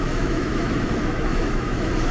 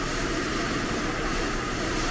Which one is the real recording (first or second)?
second